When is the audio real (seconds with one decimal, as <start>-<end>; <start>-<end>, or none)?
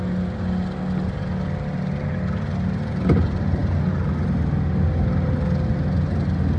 0.0-6.6